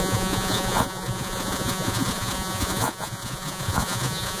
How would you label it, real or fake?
fake